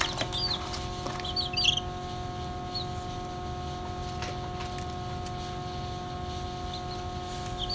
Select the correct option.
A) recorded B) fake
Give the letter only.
A